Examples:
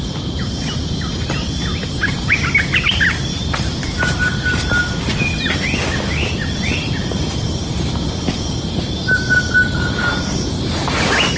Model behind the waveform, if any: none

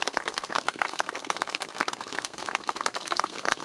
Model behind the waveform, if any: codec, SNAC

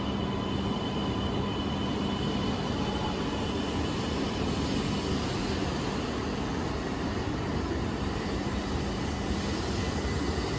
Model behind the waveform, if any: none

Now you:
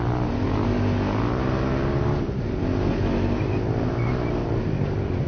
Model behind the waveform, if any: none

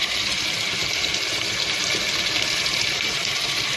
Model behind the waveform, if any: none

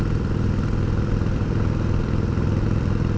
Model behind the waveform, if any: vocoder, BigVGAN v2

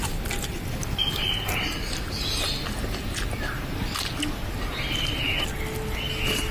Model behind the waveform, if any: none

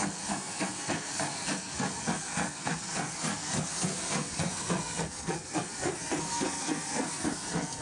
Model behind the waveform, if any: codec, SNAC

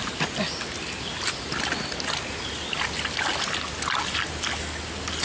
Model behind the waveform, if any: none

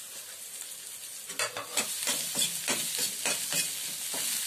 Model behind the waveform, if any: none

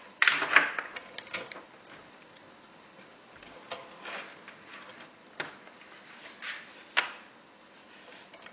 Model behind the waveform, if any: none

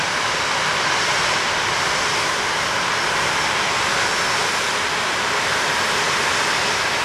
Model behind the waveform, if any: none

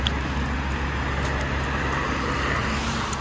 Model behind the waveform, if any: none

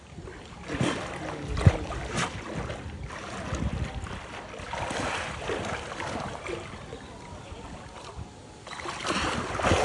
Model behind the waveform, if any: none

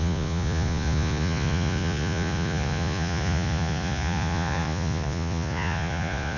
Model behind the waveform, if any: vocoder, Vocos